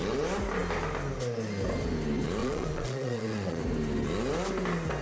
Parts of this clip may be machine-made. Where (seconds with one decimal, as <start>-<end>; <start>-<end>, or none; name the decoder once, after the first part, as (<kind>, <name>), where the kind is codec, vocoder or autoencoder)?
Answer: 2.4-3.6 (vocoder, Vocos)

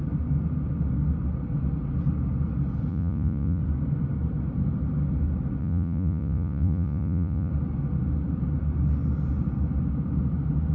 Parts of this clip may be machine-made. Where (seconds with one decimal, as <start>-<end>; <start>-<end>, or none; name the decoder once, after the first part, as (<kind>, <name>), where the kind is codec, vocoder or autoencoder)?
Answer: 2.9-3.6 (vocoder, Vocos); 5.6-7.5